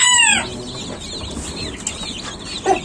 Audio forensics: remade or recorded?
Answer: recorded